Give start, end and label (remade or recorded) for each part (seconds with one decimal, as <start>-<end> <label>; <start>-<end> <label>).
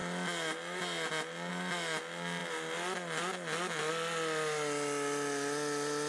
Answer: 0.0-6.1 recorded